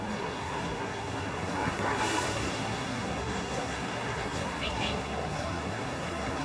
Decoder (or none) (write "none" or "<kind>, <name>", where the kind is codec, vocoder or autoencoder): codec, SNAC